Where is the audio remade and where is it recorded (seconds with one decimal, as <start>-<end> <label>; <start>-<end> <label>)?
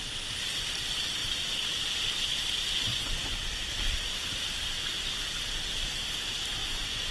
0.0-2.9 recorded; 2.9-3.7 remade; 3.7-6.6 recorded; 6.6-7.1 remade